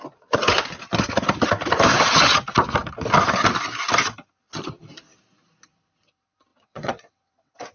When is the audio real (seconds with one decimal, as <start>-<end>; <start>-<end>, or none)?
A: 0.0-6.5